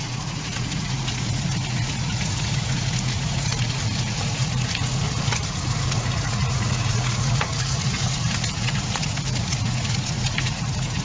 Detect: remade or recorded remade